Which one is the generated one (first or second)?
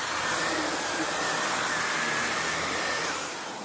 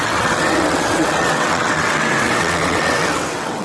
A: second